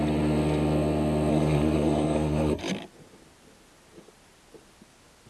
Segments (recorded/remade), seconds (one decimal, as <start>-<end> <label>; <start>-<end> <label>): 0.0-1.3 recorded; 1.3-2.6 remade; 2.6-5.3 recorded

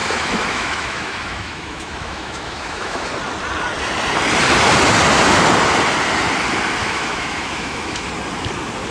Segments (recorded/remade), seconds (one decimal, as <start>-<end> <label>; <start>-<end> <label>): 0.0-3.1 remade; 3.1-6.8 recorded; 6.8-8.1 remade; 8.1-8.9 recorded

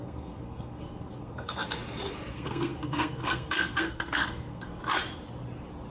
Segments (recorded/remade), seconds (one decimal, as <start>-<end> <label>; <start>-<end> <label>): 0.0-1.6 remade; 1.6-2.3 recorded; 2.3-4.8 remade; 4.8-5.9 recorded

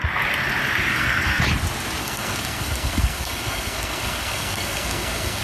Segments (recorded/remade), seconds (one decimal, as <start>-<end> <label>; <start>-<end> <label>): 0.0-0.9 recorded; 0.9-1.4 remade; 1.4-2.0 recorded; 2.0-5.4 remade